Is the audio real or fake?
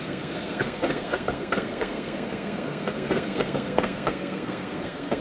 fake